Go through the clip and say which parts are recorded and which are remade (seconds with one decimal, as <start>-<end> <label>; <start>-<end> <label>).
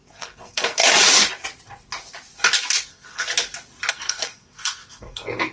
0.0-0.8 remade; 0.8-2.9 recorded; 2.9-3.3 remade; 3.3-3.9 recorded; 3.9-5.5 remade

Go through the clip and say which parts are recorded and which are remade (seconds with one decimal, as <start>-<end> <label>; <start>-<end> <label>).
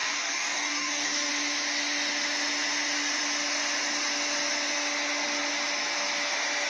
0.0-1.3 remade; 1.3-6.7 recorded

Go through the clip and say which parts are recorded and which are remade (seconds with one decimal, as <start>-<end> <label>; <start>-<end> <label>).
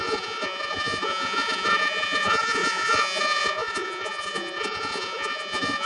0.0-5.9 remade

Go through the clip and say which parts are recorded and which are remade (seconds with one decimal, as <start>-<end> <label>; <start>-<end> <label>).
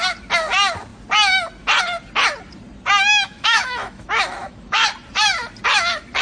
0.0-3.1 recorded; 3.1-4.9 remade; 4.9-6.2 recorded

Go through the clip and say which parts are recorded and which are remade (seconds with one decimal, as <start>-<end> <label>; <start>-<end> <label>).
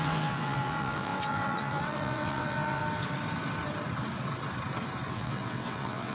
0.0-2.8 remade; 2.8-5.1 recorded; 5.1-6.1 remade